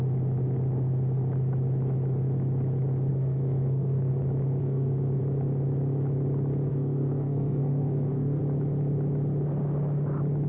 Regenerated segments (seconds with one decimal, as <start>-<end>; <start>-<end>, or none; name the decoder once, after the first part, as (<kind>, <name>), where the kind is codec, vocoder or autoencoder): 3.1-4.1 (codec, SNAC); 4.6-5.2; 6.7-8.4